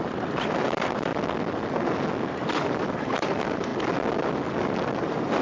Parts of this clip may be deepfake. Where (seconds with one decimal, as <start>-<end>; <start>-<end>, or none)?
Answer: 0.0-1.1; 2.3-3.7; 4.6-5.4